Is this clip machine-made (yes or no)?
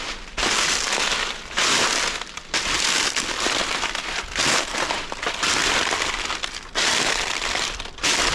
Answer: no